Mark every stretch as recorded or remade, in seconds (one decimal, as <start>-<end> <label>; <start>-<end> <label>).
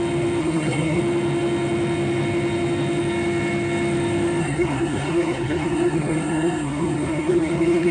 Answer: 0.0-0.4 recorded; 0.4-1.0 remade; 1.0-4.4 recorded; 4.4-7.9 remade